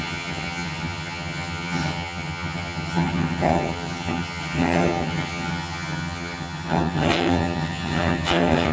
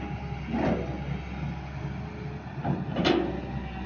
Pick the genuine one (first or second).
second